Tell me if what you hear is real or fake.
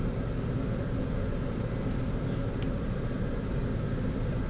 real